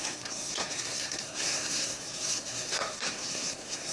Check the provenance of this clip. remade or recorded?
remade